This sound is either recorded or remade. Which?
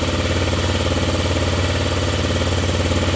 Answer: recorded